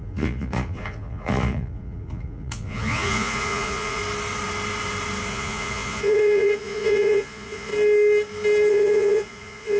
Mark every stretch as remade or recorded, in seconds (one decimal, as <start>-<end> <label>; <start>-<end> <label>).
0.0-4.0 remade; 4.0-5.3 recorded; 5.3-7.7 remade; 7.7-8.7 recorded; 8.7-9.8 remade